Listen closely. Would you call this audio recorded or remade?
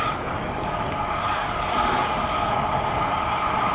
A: remade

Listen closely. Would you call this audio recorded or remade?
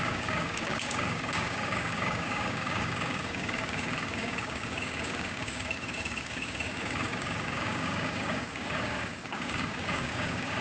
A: remade